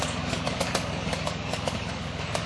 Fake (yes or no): yes